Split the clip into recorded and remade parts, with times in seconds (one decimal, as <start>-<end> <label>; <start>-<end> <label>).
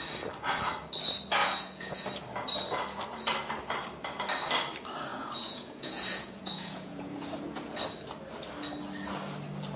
0.0-1.4 recorded; 1.4-2.0 remade; 2.0-5.1 recorded; 5.1-7.8 remade; 7.8-9.8 recorded